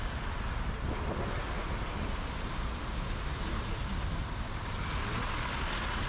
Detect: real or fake real